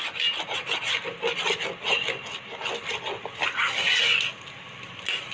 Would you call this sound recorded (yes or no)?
yes